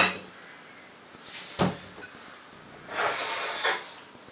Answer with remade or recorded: recorded